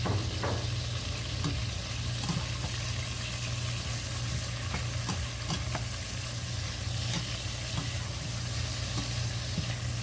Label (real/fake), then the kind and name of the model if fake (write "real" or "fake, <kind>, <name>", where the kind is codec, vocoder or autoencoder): real